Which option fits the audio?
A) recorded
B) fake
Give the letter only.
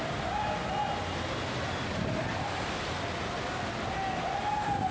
A